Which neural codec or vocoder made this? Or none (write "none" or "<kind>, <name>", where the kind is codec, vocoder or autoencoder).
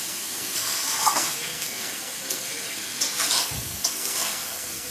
codec, SNAC